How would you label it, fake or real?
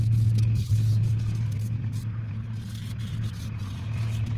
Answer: real